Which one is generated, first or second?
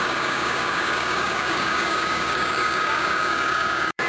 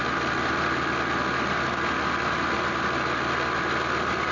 first